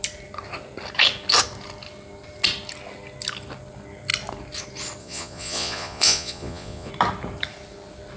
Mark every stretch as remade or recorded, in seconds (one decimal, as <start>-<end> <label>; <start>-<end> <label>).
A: 0.0-5.0 recorded; 5.0-6.9 remade; 6.9-8.2 recorded